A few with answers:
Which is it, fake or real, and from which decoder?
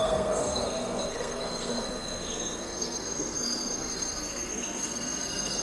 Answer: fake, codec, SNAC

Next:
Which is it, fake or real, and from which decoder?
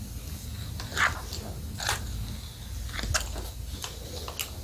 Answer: real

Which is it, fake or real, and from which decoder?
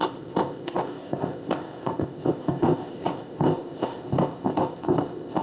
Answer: fake, codec, ZipCodec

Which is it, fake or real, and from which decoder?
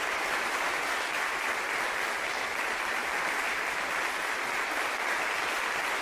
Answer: real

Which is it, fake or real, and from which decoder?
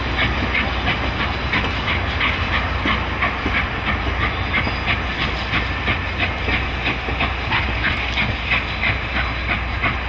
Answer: real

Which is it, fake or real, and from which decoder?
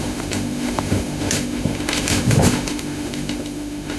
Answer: fake, autoencoder, DAC-VAE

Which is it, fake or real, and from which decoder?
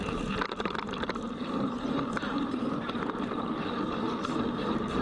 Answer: fake, vocoder, BigVGAN v2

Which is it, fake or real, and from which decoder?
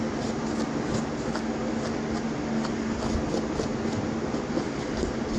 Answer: real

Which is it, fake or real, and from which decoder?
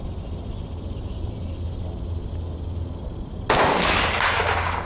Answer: real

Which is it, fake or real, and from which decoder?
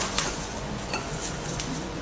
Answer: fake, vocoder, Vocos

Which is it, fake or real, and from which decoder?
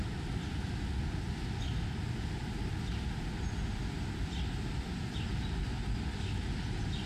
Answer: real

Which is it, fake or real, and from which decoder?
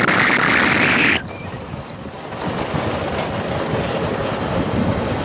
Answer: real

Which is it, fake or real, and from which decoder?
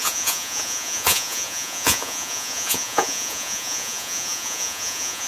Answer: fake, vocoder, Vocos